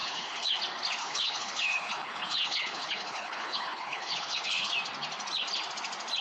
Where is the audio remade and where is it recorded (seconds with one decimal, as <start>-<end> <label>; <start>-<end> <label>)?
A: 0.0-0.6 remade; 0.6-1.0 recorded; 1.0-4.7 remade; 4.7-6.2 recorded